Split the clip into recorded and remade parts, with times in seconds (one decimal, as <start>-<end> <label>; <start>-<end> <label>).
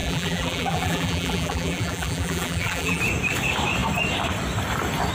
0.0-3.0 remade; 3.0-5.1 recorded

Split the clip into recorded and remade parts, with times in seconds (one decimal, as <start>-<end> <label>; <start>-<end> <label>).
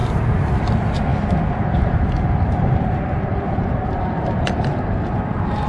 0.0-0.5 remade; 0.5-1.1 recorded; 1.1-4.5 remade; 4.5-5.7 recorded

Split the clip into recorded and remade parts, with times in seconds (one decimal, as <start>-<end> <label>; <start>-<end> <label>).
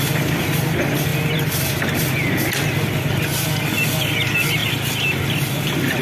0.0-4.6 recorded; 4.6-5.6 remade; 5.6-6.0 recorded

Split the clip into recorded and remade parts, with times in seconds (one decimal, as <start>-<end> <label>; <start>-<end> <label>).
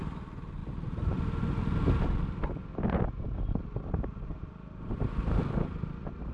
0.0-0.6 remade; 0.6-4.4 recorded; 4.4-6.3 remade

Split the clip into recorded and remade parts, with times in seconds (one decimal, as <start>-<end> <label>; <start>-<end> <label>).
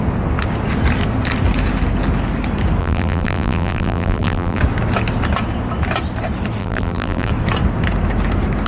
0.0-2.8 recorded; 2.8-4.6 remade; 4.6-6.6 recorded; 6.6-7.3 remade; 7.3-8.7 recorded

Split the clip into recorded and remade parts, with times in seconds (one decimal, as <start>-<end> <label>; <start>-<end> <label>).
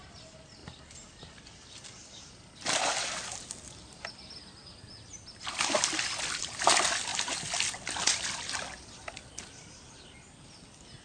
0.0-11.0 recorded